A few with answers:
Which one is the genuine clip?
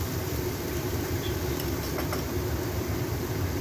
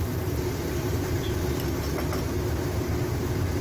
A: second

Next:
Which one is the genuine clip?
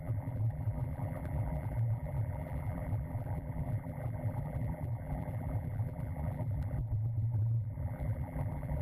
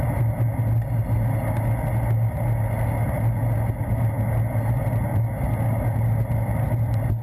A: second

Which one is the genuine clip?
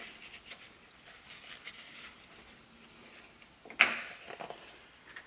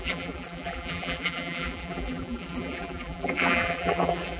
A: first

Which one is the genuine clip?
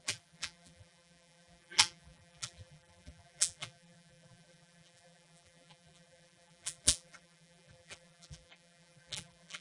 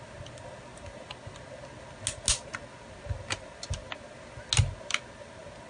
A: second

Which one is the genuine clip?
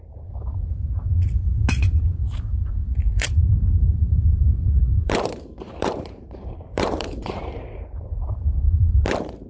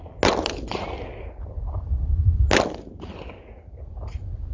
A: second